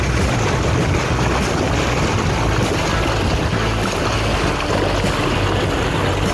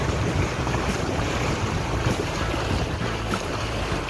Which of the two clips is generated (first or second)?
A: second